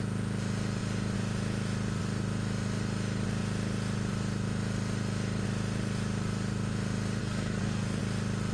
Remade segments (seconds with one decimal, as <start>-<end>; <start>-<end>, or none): 7.2-8.0